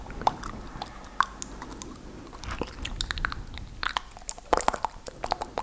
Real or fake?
real